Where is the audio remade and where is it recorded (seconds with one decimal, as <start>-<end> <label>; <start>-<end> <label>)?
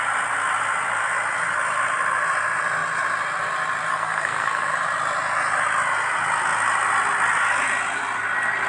0.0-3.9 recorded; 3.9-4.7 remade; 4.7-8.7 recorded